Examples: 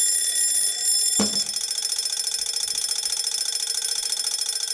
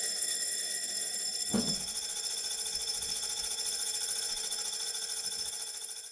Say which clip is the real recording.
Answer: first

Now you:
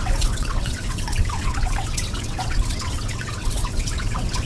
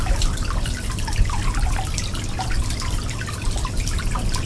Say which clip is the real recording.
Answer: second